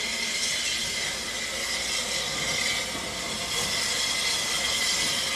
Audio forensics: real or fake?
real